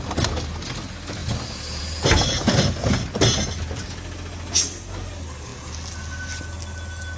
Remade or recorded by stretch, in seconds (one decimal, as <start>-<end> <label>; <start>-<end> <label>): 0.0-7.2 recorded